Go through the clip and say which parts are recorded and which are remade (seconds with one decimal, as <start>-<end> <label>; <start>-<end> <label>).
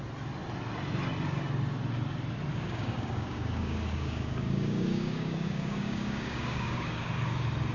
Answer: 0.0-2.5 recorded; 2.5-7.1 remade; 7.1-7.7 recorded